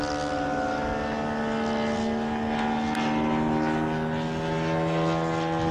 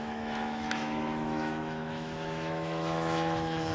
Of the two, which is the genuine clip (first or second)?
first